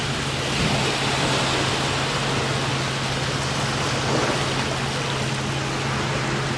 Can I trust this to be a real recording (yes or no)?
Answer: yes